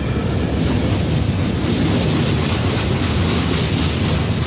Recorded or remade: recorded